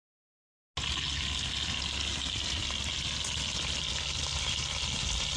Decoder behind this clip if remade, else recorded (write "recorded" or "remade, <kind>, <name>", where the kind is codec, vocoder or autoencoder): recorded